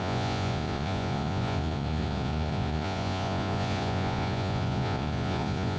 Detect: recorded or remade remade